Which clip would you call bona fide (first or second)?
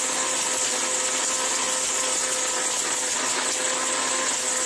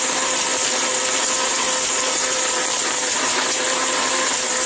first